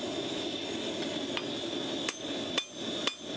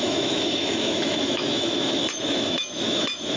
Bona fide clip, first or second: first